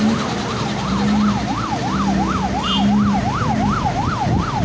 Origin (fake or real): real